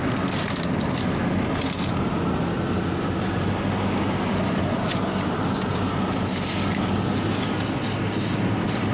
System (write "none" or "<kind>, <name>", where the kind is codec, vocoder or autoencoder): none